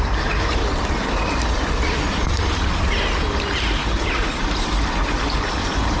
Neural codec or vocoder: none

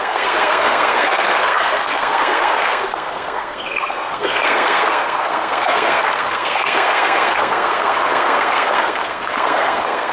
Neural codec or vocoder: codec, SNAC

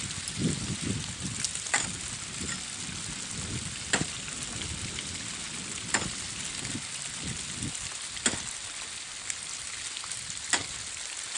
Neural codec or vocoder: none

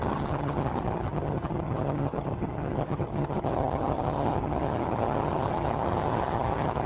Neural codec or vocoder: vocoder, HiFi-GAN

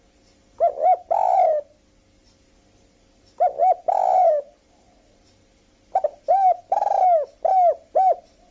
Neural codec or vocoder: none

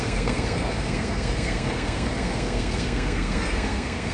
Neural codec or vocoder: codec, SNAC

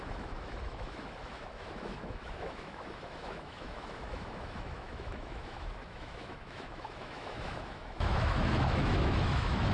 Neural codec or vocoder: autoencoder, DAC-VAE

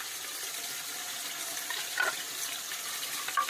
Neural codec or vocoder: none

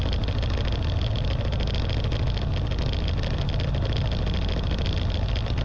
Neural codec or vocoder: none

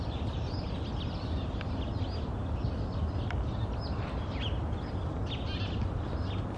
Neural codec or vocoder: none